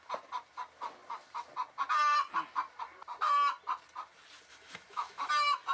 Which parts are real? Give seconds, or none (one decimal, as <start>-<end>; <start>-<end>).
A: 0.0-4.5; 5.3-5.7